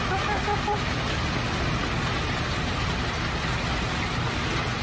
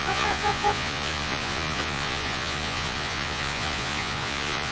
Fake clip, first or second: second